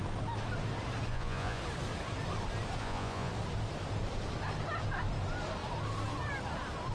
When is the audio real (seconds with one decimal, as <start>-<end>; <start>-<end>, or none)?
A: 0.0-1.1; 1.6-2.8; 3.3-6.9